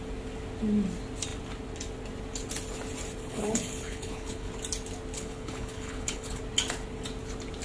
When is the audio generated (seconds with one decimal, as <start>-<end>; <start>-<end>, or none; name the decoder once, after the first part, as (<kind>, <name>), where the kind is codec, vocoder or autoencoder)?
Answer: 3.2-4.5 (codec, HILCodec); 5.1-6.4